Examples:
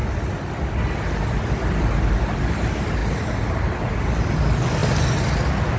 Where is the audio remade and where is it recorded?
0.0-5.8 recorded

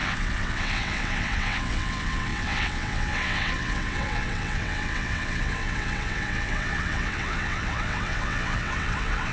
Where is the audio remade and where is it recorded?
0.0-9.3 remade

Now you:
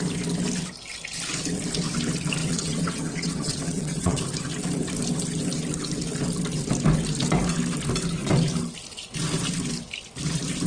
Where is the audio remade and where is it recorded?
0.0-2.4 recorded; 2.4-4.2 remade; 4.2-10.7 recorded

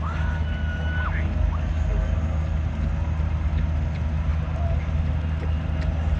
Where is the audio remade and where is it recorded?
0.0-6.2 recorded